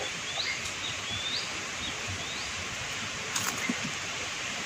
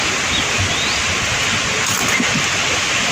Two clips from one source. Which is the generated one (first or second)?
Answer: first